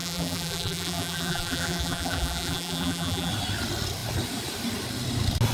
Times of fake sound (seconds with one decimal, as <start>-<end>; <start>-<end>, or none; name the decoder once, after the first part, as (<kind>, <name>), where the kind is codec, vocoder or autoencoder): 0.0-3.3 (vocoder, BigVGAN v2)